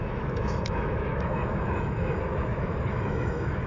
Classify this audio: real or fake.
fake